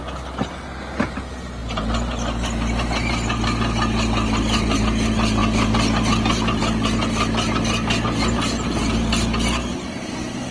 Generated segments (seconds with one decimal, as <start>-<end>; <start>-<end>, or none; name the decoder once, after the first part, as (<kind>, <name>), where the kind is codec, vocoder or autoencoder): none